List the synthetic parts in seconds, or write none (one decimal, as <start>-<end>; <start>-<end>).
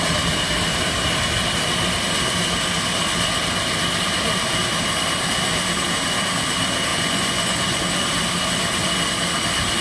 6.9-7.8